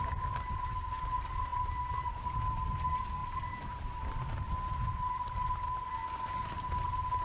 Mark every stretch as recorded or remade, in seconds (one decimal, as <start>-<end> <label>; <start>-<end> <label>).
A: 0.0-7.2 recorded